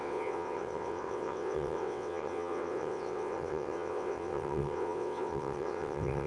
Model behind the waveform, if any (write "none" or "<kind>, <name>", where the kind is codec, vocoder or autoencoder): vocoder, WaveNeXt